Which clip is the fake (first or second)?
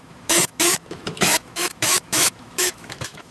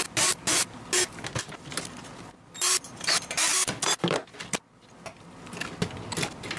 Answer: first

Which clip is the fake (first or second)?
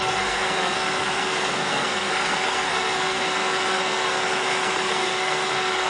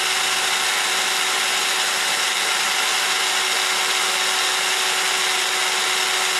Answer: first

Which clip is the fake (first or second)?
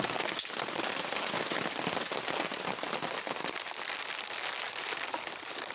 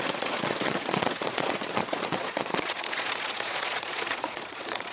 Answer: second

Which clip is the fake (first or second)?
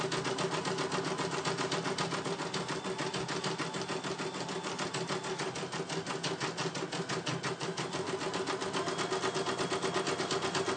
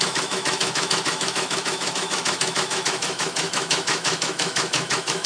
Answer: second